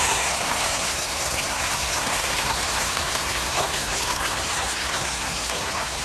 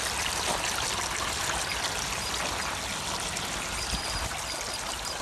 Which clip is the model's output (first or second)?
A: first